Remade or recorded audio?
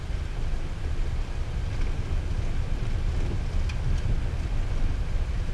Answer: recorded